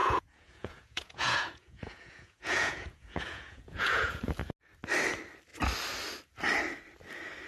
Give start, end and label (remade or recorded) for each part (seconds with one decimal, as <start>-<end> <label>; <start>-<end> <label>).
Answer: 0.0-4.2 remade; 4.2-7.5 recorded